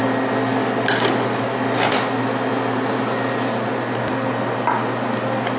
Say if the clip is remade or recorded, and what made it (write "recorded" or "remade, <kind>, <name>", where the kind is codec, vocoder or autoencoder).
recorded